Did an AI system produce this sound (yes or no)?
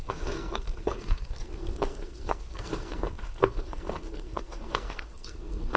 yes